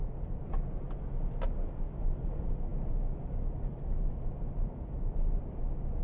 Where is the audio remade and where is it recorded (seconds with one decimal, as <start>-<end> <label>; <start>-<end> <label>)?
0.0-6.0 recorded